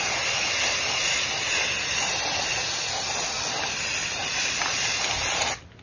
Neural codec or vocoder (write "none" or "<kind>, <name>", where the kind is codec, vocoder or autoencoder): none